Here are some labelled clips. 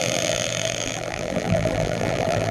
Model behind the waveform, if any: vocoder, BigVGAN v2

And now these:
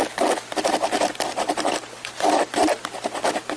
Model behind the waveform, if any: vocoder, BigVGAN v2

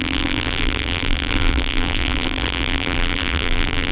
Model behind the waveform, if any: vocoder, BigVGAN v2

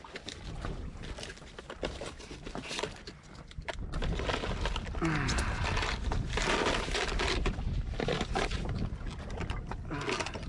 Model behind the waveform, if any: none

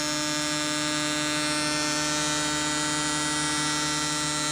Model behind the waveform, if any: none